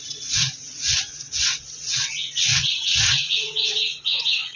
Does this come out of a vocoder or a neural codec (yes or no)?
yes